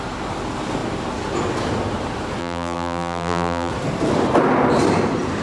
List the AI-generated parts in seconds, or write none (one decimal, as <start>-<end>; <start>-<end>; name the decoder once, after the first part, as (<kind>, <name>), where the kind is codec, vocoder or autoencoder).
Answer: 2.4-3.7 (vocoder, BigVGAN v2)